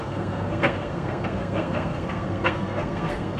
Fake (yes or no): yes